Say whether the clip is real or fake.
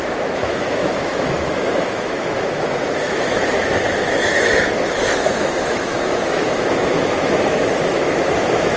fake